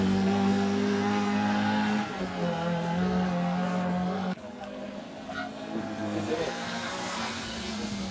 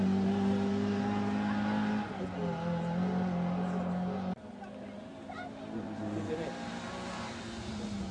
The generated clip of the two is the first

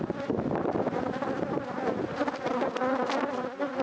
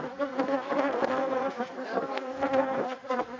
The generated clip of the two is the second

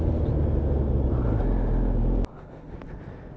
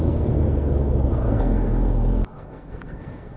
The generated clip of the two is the second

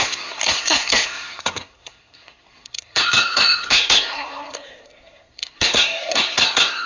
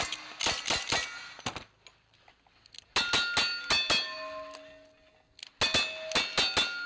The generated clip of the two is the first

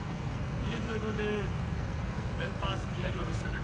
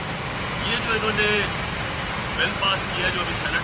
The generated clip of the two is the first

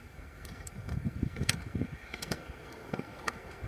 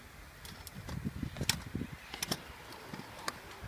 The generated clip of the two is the first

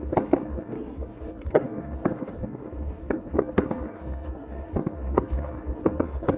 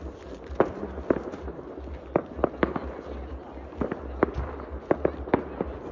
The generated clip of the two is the first